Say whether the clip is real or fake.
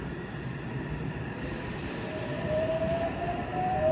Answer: fake